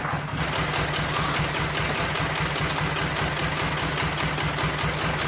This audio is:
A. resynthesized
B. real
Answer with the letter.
B